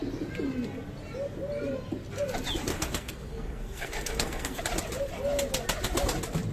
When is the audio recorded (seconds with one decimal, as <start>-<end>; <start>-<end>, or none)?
0.0-2.7; 4.6-6.5